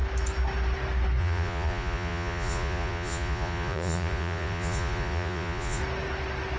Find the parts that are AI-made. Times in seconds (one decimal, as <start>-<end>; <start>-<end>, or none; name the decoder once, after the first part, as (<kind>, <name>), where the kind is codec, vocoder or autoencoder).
1.2-5.8 (vocoder, Vocos)